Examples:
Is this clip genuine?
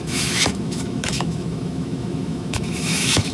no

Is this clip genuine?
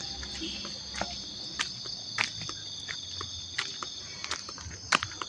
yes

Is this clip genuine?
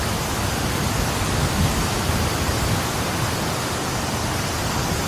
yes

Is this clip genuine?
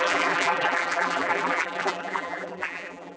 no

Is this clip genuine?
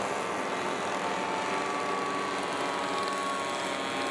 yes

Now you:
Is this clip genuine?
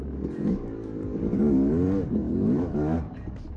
no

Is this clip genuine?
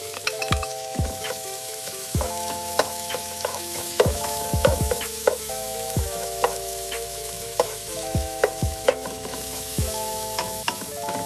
no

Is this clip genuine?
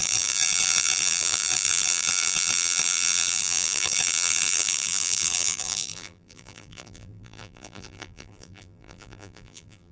no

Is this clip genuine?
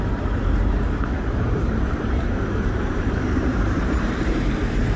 no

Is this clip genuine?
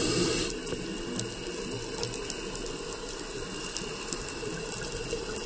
yes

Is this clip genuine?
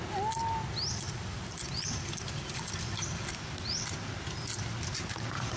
yes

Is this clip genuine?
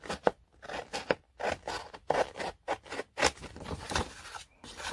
yes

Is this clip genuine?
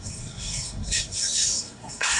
no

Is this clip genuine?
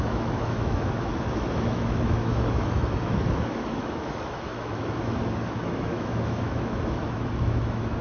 no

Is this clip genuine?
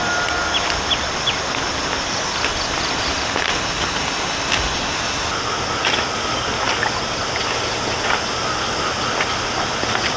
yes